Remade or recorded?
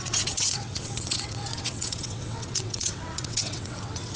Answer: remade